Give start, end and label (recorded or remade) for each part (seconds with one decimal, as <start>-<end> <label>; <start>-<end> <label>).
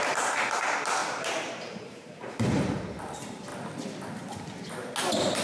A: 0.0-1.0 recorded; 1.0-2.3 remade; 2.3-5.4 recorded